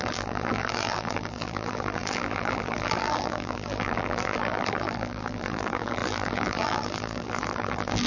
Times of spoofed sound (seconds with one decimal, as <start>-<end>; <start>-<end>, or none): 0.0-8.1